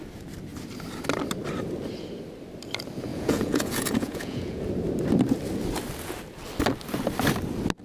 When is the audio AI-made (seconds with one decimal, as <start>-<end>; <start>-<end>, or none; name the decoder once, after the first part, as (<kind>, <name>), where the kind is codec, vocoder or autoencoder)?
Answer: 3.1-4.6 (vocoder, Vocos)